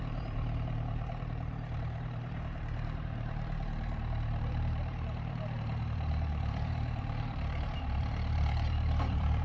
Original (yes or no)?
no